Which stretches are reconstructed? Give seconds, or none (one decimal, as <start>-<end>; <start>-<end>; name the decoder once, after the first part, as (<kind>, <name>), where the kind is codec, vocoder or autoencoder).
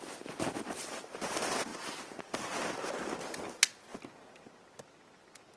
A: none